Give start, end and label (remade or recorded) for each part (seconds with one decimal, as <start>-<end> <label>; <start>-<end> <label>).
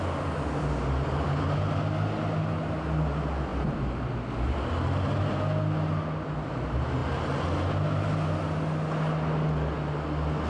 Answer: 0.0-10.5 recorded